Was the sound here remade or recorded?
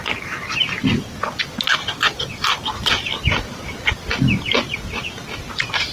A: recorded